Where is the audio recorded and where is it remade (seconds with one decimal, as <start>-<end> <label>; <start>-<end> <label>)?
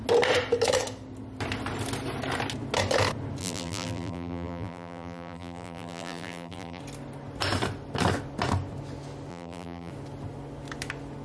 0.0-3.4 recorded; 3.4-6.8 remade; 6.8-9.3 recorded; 9.3-9.9 remade; 9.9-11.2 recorded